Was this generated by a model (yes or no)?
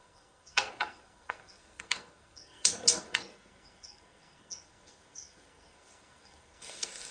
yes